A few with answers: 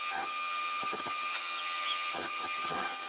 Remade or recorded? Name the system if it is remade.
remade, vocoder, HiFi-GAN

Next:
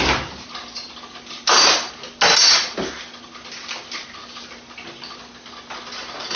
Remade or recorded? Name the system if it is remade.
recorded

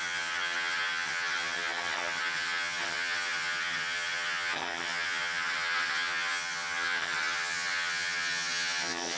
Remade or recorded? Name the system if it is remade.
remade, vocoder, HiFi-GAN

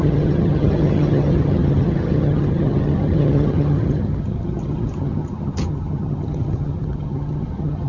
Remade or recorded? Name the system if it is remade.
remade, vocoder, HiFi-GAN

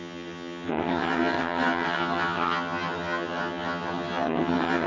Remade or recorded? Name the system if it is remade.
remade, vocoder, HiFi-GAN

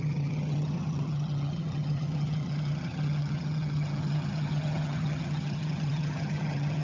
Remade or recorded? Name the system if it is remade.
remade, vocoder, HiFi-GAN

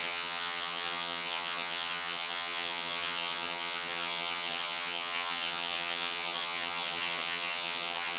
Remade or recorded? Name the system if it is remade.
remade, vocoder, HiFi-GAN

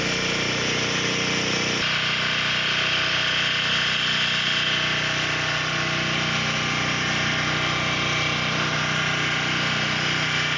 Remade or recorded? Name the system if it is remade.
recorded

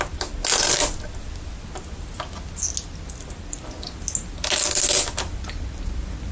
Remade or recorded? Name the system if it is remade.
recorded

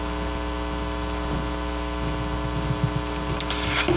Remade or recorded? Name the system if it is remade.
recorded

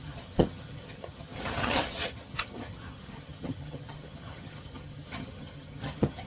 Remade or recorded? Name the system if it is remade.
remade, vocoder, HiFi-GAN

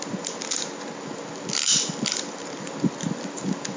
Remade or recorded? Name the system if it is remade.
recorded